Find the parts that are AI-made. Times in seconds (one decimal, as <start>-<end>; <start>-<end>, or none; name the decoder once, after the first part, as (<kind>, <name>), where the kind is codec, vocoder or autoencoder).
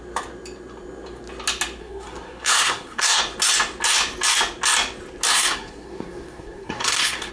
1.8-3.2 (codec, SNAC); 5.3-7.3